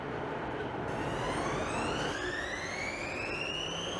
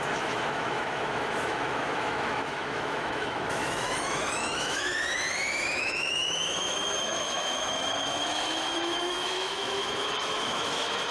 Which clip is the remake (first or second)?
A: second